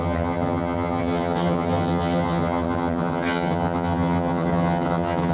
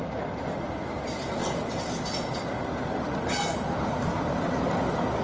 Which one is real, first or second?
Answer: second